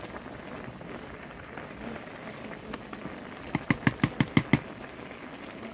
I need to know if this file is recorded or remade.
recorded